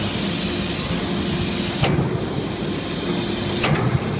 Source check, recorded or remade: recorded